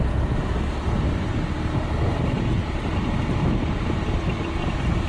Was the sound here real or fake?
real